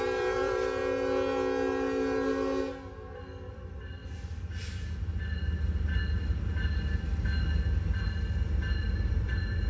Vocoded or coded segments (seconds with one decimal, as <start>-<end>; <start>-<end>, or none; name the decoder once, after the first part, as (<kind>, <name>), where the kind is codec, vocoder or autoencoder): 0.0-0.8 (vocoder, BigVGAN v2); 3.5-4.0; 9.1-9.7